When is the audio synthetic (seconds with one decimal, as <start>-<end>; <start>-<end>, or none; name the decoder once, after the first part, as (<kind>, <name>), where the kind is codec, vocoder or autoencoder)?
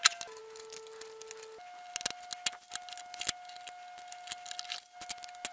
none